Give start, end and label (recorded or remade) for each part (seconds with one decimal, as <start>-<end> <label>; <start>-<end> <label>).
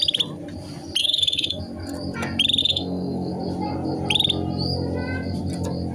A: 0.0-1.0 recorded; 1.0-1.6 remade; 1.6-2.6 recorded; 2.6-3.3 remade; 3.3-5.9 recorded